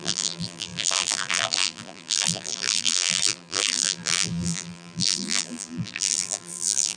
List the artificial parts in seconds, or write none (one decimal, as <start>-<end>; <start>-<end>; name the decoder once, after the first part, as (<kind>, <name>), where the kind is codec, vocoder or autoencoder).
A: 0.0-7.0 (vocoder, BigVGAN v2)